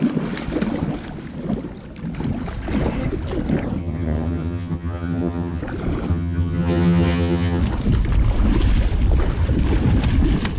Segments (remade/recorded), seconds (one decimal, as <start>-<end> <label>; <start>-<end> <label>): 0.0-3.8 recorded; 3.8-5.6 remade; 5.6-6.1 recorded; 6.1-7.6 remade; 7.6-10.6 recorded